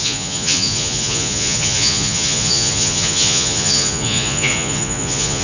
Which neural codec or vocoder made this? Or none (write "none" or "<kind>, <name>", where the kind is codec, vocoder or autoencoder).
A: vocoder, Vocos